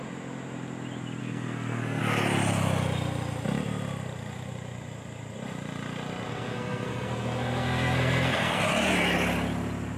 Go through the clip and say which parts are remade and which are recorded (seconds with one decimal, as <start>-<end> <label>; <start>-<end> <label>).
0.0-1.2 recorded; 1.2-2.0 remade; 2.0-6.3 recorded; 6.3-8.6 remade; 8.6-10.0 recorded